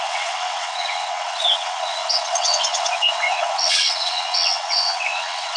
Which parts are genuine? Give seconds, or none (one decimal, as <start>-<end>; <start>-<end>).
none